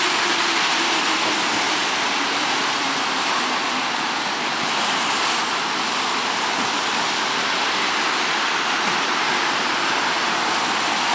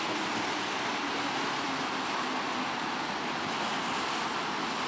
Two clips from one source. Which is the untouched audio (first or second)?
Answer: second